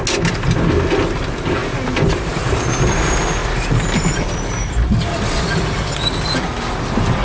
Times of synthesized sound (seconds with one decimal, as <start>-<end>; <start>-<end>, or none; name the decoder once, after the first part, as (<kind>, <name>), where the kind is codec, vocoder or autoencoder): 1.6-2.4 (vocoder, BigVGAN v2); 3.4-6.4